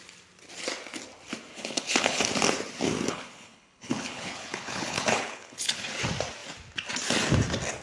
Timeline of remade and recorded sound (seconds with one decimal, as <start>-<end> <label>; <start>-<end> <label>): 0.0-1.5 recorded; 1.5-2.2 remade; 2.2-3.1 recorded; 3.1-5.9 remade; 5.9-7.8 recorded